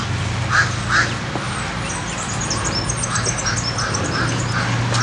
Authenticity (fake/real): real